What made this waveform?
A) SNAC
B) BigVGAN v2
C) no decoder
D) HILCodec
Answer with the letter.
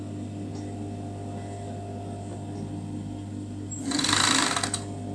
C